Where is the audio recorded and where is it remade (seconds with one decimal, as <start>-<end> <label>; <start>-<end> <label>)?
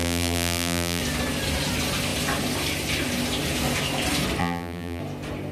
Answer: 0.0-1.0 remade; 1.0-4.4 recorded; 4.4-5.0 remade; 5.0-5.5 recorded